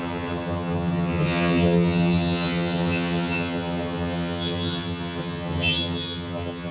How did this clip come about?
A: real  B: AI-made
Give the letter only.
B